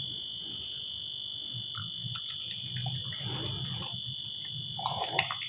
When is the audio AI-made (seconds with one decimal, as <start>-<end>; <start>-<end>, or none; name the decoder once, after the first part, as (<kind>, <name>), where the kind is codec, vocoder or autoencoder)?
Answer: none